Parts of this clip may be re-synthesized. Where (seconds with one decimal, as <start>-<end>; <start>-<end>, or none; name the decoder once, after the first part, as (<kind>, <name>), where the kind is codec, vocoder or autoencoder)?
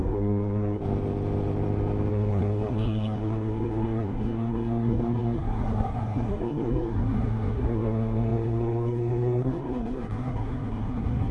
0.0-0.8 (codec, SNAC); 2.1-11.3